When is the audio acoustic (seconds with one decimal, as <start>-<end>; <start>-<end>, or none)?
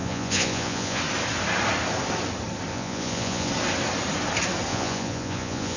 1.0-2.7; 3.5-4.7